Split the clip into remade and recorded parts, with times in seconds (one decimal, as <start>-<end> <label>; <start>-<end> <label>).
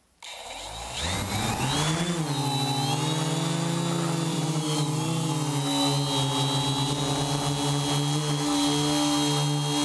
0.0-4.3 recorded; 4.3-5.3 remade; 5.3-9.8 recorded